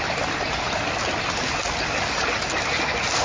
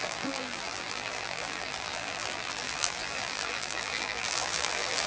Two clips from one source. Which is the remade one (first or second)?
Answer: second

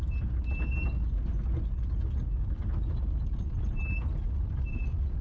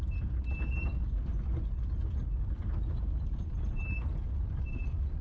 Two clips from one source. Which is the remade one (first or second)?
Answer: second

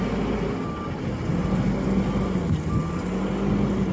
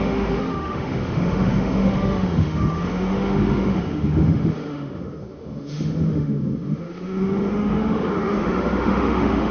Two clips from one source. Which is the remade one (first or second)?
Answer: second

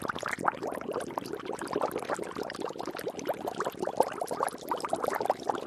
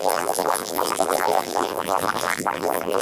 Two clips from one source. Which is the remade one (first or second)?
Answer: second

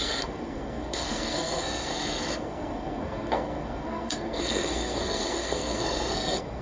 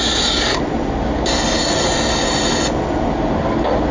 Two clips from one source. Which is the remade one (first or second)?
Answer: first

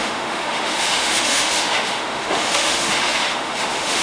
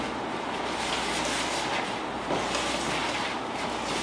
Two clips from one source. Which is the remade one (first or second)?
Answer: first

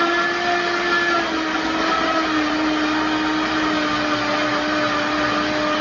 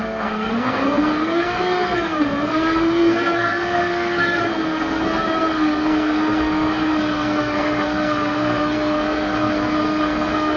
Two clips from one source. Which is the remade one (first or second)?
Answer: second